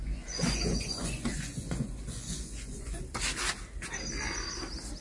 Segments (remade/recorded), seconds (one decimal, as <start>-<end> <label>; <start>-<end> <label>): 0.0-3.0 remade; 3.0-5.0 recorded